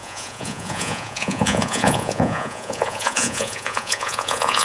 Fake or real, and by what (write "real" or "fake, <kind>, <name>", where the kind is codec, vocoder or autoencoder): fake, vocoder, Vocos